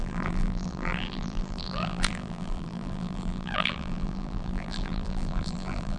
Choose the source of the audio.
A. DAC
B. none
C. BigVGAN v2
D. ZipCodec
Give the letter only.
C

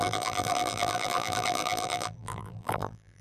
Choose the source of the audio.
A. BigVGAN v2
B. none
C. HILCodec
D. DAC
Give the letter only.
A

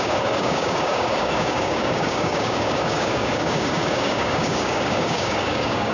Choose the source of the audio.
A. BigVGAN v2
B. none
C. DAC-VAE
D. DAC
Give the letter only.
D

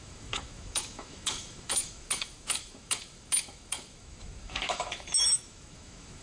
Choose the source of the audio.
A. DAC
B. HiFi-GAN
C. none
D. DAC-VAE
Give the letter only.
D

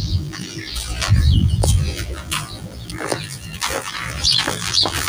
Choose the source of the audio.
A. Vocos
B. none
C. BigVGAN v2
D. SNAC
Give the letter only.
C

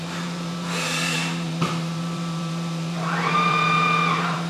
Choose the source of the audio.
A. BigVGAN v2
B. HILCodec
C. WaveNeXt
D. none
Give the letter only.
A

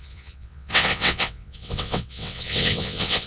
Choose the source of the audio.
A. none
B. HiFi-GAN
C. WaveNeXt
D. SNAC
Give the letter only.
C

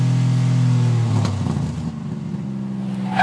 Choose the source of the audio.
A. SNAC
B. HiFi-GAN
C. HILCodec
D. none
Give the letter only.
D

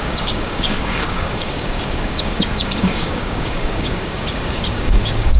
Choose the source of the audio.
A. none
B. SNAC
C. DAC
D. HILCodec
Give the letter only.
C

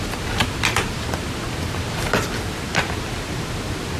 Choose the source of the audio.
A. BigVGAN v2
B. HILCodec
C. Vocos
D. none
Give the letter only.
D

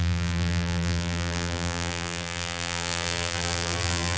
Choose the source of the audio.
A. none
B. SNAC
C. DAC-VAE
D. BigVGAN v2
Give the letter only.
D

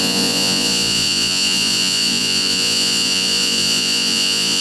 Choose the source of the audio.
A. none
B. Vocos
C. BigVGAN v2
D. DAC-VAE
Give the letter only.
B